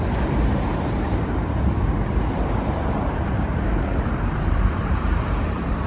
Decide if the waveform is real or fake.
fake